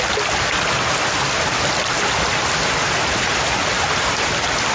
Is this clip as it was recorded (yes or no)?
yes